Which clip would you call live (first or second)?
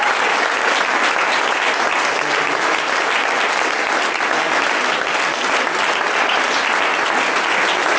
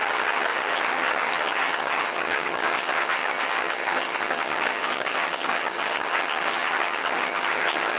first